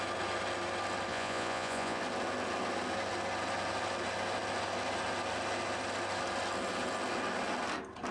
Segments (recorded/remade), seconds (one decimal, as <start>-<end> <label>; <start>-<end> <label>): 0.0-1.1 recorded; 1.1-2.0 remade; 2.0-8.1 recorded